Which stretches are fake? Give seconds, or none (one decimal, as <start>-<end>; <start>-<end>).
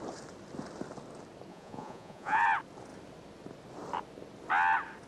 1.5-2.4